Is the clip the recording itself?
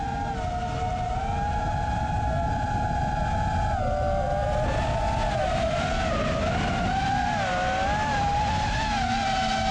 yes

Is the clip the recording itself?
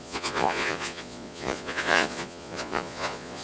no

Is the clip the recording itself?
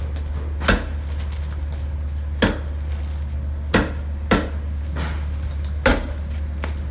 yes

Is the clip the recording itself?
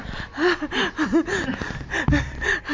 yes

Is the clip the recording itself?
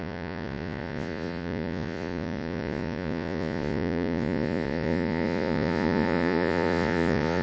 no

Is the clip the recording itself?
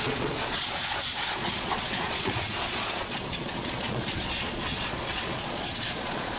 no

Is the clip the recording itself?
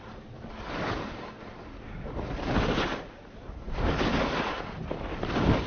yes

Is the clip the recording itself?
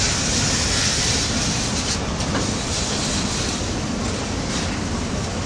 yes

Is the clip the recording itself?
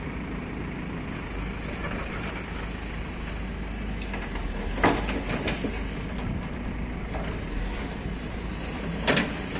yes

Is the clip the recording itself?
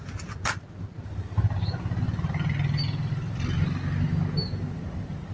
yes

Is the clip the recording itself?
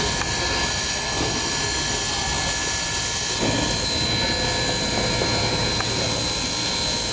yes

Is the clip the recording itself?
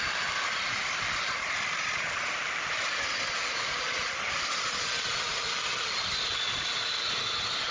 yes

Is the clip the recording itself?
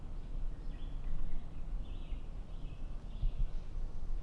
yes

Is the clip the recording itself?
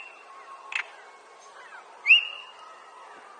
yes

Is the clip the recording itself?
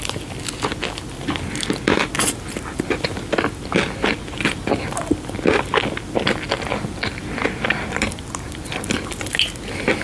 yes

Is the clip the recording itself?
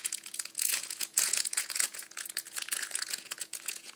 no